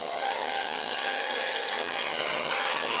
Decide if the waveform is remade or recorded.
remade